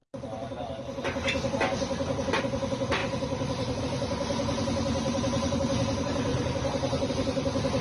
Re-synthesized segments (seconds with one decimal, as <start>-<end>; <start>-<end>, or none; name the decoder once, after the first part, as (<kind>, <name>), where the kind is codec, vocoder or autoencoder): 5.0-5.6 (vocoder, BigVGAN v2); 6.3-7.1